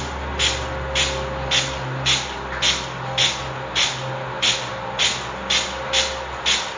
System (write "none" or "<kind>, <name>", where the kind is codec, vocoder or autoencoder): none